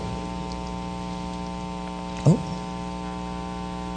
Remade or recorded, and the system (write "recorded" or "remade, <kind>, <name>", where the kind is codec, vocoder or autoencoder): recorded